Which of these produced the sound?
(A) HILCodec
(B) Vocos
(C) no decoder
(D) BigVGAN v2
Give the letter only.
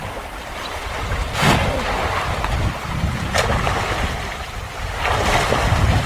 D